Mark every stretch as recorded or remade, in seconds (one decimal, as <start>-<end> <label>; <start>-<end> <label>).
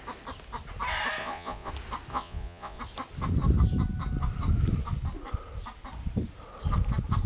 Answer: 0.0-1.2 recorded; 1.2-1.7 remade; 1.7-2.1 recorded; 2.1-2.8 remade; 2.8-7.3 recorded